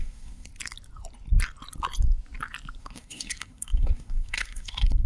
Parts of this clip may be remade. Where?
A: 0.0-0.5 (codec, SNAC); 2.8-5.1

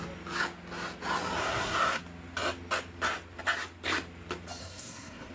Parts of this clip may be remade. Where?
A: 1.4-2.0 (codec, SNAC); 4.6-5.3